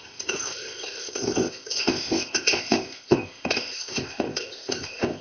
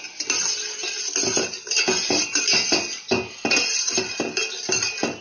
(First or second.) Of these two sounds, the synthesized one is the first